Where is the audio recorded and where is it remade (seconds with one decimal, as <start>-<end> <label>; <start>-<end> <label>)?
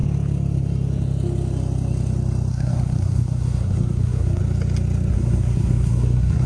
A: 0.0-2.5 recorded; 2.5-4.4 remade; 4.4-5.1 recorded; 5.1-6.5 remade